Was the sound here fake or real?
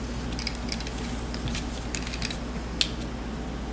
real